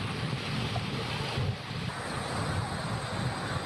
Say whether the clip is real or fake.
real